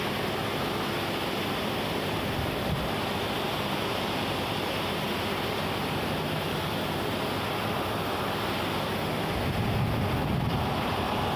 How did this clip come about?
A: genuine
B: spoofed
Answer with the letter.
A